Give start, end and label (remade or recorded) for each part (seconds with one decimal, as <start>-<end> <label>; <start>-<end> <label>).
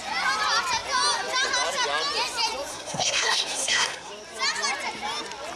0.0-2.7 recorded; 2.7-4.1 remade; 4.1-5.6 recorded